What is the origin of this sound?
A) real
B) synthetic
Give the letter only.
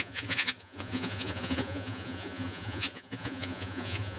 B